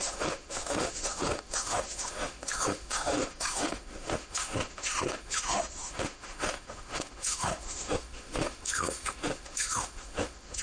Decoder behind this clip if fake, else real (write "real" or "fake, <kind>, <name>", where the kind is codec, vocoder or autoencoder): fake, autoencoder, DAC-VAE